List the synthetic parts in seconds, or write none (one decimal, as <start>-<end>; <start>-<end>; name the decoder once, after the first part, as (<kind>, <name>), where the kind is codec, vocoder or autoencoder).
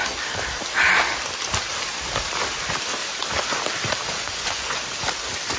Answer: 4.1-4.8 (vocoder, Vocos)